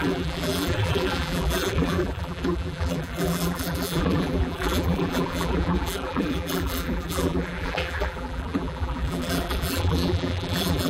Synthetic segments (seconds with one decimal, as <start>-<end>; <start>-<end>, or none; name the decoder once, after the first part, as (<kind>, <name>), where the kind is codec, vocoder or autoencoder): 0.0-10.9 (vocoder, BigVGAN v2)